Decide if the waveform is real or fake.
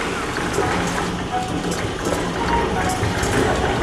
real